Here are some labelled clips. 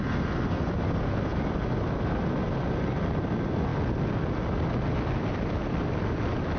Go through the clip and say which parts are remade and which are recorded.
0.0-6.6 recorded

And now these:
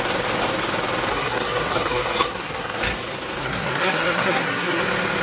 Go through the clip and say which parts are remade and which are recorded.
0.0-1.1 recorded; 1.1-2.8 remade; 2.8-3.4 recorded; 3.4-4.8 remade; 4.8-5.2 recorded

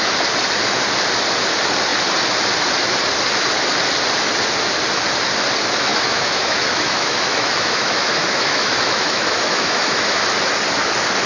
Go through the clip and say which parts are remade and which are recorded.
0.0-5.9 recorded; 5.9-10.2 remade; 10.2-11.3 recorded